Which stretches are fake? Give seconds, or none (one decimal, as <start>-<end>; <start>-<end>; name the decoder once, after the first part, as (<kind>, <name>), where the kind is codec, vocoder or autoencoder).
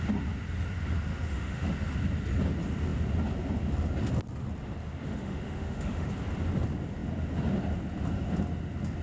1.1-1.7 (autoencoder, DAC-VAE); 5.0-6.1